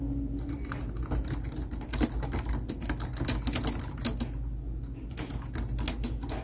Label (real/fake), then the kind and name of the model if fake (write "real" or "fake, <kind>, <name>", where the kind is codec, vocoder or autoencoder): real